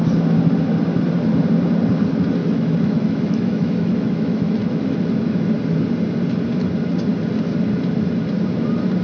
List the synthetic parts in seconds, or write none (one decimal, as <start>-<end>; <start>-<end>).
2.4-5.5